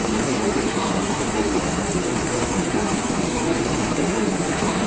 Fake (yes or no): yes